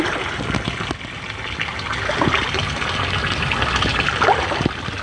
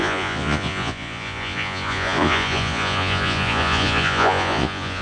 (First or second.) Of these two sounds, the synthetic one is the second